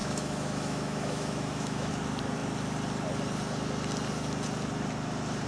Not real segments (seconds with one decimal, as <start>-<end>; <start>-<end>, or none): 0.0-1.9

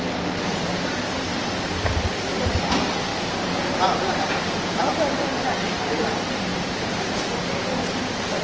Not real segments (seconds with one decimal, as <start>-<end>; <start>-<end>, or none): 1.3-2.3; 3.1-4.8; 6.5-7.0

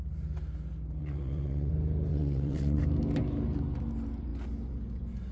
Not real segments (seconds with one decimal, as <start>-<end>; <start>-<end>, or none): 1.0-1.7; 2.1-2.8

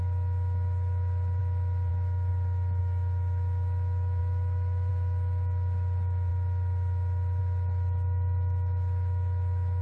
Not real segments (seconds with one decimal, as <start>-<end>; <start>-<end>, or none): 0.0-1.4; 1.9-2.3; 2.8-6.3; 7.4-9.8

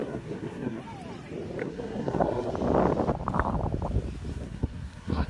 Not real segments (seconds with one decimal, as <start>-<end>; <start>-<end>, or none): 0.0-0.8; 1.6-2.5; 4.3-5.3

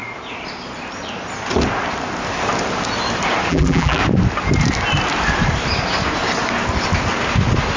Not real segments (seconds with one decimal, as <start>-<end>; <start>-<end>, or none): 3.5-4.0

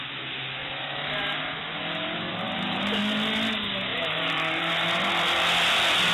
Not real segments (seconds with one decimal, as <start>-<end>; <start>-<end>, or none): 0.6-1.2; 2.3-3.0; 3.9-4.7

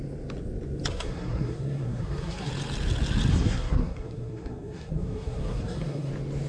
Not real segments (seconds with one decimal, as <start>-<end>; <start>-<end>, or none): 0.9-2.5; 3.3-6.1